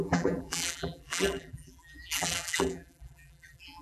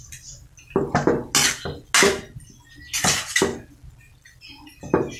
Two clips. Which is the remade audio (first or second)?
first